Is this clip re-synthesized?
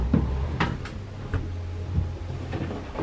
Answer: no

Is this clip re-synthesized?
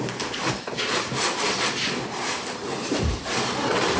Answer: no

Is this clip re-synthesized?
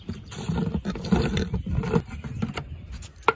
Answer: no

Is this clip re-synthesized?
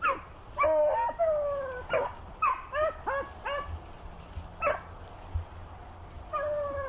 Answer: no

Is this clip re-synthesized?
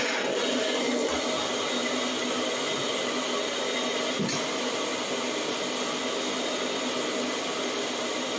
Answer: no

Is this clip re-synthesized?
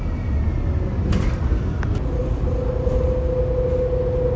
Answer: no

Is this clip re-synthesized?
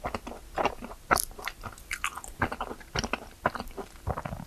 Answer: no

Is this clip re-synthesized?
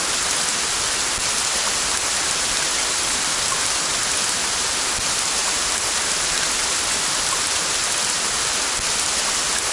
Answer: no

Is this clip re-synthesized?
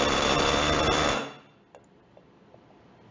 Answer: no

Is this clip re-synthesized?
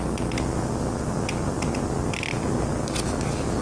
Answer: no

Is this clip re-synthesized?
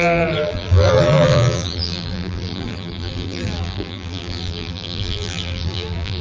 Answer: yes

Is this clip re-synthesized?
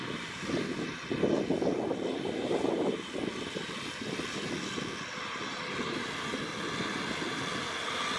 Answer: no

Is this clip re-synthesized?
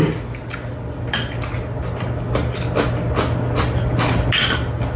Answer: no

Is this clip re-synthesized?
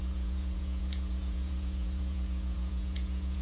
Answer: yes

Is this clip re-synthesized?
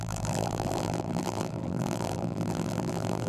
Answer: yes